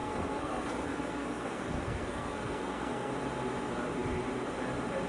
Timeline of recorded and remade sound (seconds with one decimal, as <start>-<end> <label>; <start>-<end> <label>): 0.0-3.1 remade; 3.1-5.1 recorded